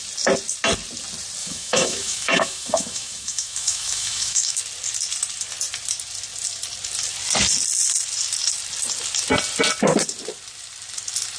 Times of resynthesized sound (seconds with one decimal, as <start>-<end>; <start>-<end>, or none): 1.4-4.6